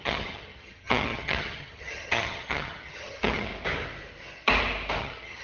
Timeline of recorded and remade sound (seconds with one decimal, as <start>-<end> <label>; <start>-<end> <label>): 0.0-3.5 remade; 3.5-5.0 recorded; 5.0-5.4 remade